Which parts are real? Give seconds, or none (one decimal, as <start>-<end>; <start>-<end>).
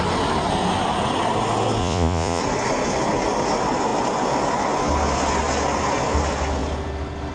0.0-1.8; 2.4-7.3